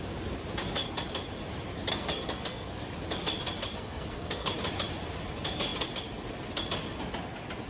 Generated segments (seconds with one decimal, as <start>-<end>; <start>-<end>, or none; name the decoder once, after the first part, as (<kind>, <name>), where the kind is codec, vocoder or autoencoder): 1.9-2.8 (codec, SNAC); 3.7-4.5